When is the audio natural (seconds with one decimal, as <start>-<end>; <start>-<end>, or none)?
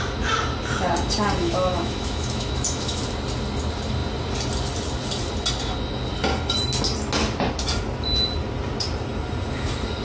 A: 0.0-1.4; 3.0-10.0